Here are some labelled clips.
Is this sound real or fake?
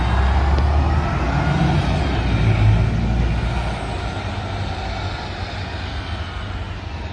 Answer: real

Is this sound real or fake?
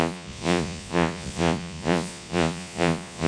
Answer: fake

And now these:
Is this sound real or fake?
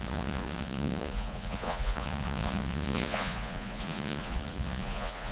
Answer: fake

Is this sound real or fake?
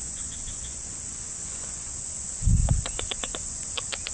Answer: fake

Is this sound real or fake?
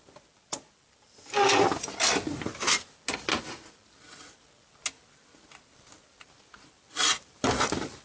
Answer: real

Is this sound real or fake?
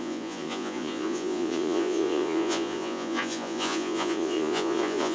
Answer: fake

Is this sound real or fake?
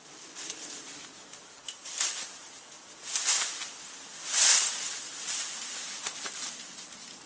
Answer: real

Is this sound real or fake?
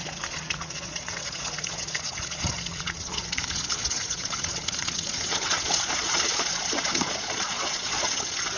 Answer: fake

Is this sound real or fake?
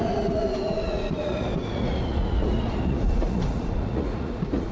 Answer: fake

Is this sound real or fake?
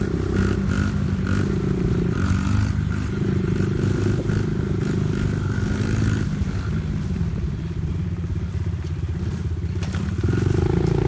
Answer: real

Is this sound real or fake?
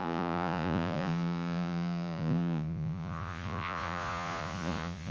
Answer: fake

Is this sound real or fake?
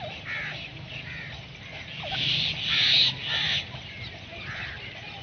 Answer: real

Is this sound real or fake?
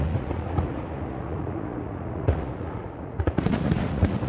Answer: fake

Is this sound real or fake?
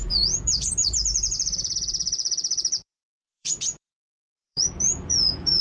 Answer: fake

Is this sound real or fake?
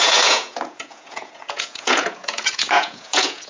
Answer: fake